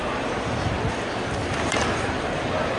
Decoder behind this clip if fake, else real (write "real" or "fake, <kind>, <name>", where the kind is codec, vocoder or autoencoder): fake, vocoder, BigVGAN v2